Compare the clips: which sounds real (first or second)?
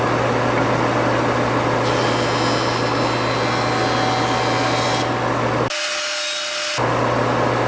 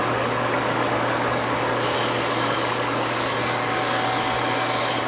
first